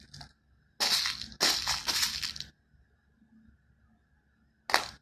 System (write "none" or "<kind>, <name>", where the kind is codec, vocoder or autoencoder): none